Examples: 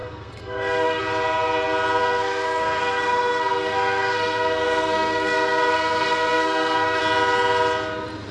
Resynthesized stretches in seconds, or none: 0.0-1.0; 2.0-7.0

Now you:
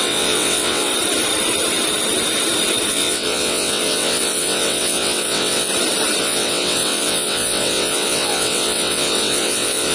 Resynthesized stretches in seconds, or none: 0.0-0.9; 2.9-5.7; 6.2-9.9

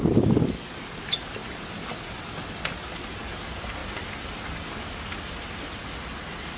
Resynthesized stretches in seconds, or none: none